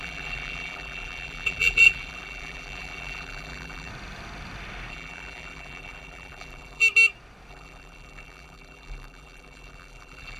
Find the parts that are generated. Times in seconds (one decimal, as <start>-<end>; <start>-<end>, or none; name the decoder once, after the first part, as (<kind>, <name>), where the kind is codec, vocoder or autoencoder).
0.0-3.9 (vocoder, BigVGAN v2); 4.9-6.8; 7.5-10.4